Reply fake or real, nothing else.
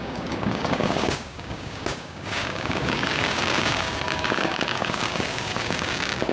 fake